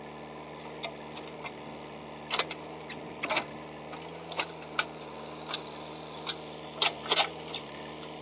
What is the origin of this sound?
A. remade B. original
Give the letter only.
B